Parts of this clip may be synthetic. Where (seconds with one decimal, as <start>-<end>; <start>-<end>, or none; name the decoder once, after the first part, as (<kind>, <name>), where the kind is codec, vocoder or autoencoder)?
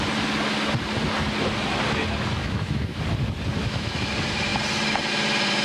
2.4-3.0 (autoencoder, DAC-VAE); 3.6-4.1